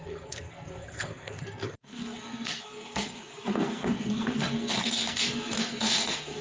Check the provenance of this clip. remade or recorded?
remade